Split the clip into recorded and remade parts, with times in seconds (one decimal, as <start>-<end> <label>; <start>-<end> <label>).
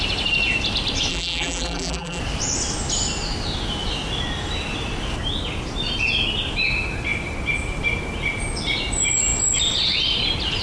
0.0-1.1 recorded; 1.1-2.2 remade; 2.2-10.6 recorded